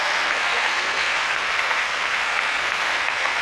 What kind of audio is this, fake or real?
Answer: fake